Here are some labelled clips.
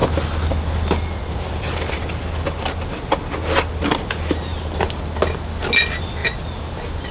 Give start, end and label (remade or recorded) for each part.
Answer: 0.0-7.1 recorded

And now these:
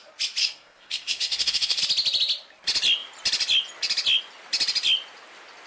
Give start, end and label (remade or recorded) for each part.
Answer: 0.0-0.4 recorded; 0.4-1.8 remade; 1.8-5.7 recorded

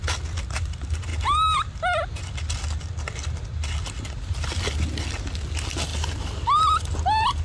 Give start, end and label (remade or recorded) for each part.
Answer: 0.0-7.4 recorded

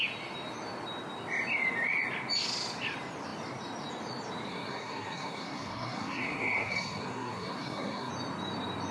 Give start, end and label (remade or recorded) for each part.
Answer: 0.0-4.5 recorded; 4.5-8.1 remade; 8.1-8.9 recorded

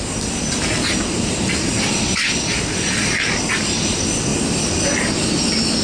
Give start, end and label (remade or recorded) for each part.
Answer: 0.0-5.8 recorded